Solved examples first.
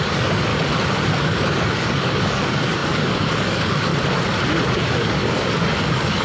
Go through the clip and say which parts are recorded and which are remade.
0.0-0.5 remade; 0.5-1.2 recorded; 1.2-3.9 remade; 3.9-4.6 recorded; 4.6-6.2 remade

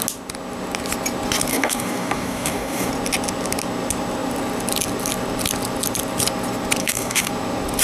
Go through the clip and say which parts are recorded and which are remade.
0.0-1.5 recorded; 1.5-2.9 remade; 2.9-6.8 recorded; 6.8-7.3 remade; 7.3-7.8 recorded

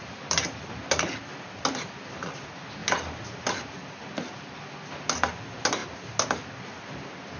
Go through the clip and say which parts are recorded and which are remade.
0.0-7.4 recorded